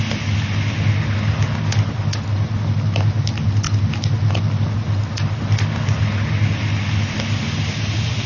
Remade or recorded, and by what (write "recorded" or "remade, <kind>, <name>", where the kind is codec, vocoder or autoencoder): recorded